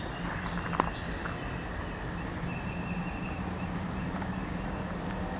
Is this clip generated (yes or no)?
no